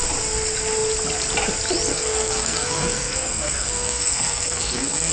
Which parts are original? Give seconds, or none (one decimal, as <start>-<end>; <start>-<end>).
0.0-1.9